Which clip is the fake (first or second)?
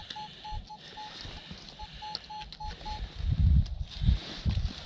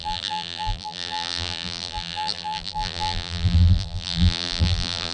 second